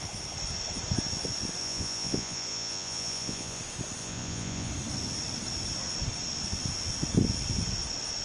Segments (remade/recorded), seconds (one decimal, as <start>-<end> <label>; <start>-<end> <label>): 0.0-1.6 recorded; 1.6-3.6 remade; 3.6-4.0 recorded; 4.0-4.7 remade; 4.7-8.2 recorded